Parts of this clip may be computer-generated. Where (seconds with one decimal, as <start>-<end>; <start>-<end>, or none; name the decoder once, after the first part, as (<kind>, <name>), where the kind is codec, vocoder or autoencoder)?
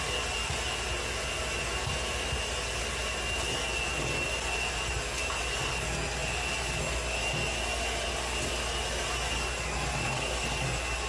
none